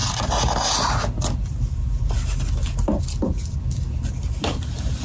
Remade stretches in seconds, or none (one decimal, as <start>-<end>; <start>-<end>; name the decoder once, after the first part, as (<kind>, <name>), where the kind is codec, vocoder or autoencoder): none